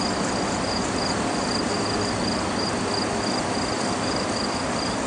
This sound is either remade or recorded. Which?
recorded